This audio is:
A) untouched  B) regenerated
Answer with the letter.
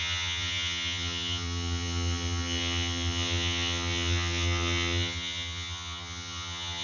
B